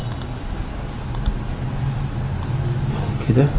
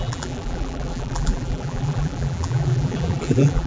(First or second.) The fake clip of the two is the second